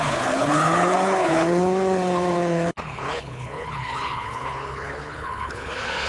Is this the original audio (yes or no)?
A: no